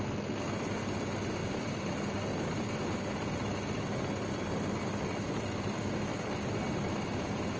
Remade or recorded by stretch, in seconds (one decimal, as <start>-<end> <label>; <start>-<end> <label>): 0.0-1.4 recorded; 1.4-5.9 remade; 5.9-7.6 recorded